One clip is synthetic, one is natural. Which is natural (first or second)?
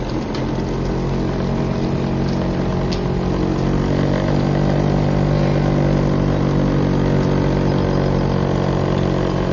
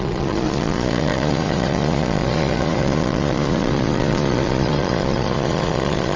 first